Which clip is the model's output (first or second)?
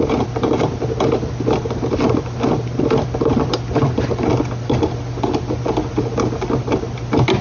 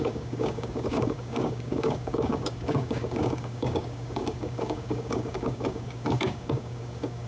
second